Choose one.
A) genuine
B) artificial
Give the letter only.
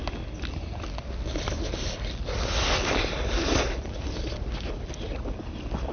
A